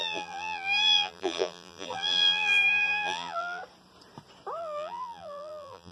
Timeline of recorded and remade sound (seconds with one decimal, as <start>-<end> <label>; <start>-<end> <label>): 0.0-3.6 remade; 3.6-4.6 recorded; 4.6-5.9 remade